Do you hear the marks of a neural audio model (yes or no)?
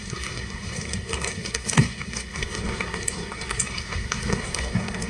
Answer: yes